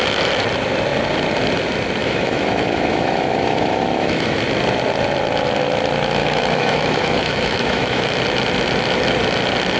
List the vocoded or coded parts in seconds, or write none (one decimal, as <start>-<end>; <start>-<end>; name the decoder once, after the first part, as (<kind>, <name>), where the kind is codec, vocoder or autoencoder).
2.0-4.4 (autoencoder, DAC-VAE); 6.2-8.0